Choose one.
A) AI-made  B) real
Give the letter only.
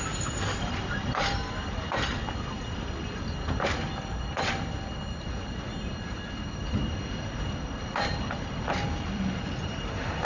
A